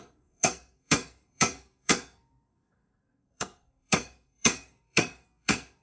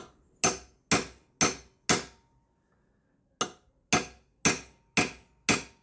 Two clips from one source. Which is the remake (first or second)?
first